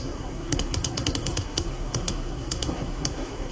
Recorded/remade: remade